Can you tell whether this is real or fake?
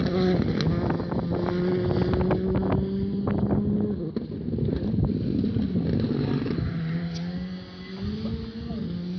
real